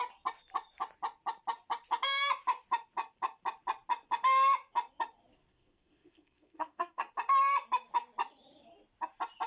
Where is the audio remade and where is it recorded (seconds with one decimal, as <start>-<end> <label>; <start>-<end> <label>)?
0.0-5.5 recorded; 5.5-7.1 remade; 7.1-9.5 recorded